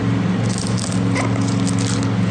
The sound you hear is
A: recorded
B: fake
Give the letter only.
A